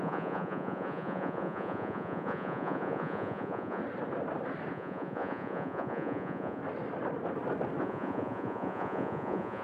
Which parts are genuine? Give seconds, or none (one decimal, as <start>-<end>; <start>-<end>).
3.8-4.7; 6.6-7.8